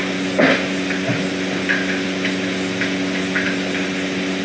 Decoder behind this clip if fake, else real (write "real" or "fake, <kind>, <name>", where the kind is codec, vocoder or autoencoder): real